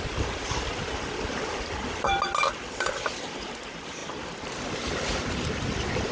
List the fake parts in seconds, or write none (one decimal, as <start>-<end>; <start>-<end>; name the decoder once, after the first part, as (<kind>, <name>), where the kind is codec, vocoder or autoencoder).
none